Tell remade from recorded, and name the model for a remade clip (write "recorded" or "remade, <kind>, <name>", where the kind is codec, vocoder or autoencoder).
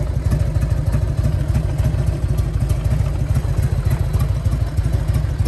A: recorded